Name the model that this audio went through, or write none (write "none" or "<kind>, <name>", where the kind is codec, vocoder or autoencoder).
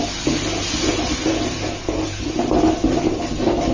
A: none